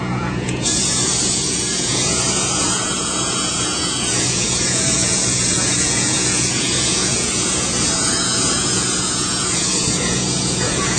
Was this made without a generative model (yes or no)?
no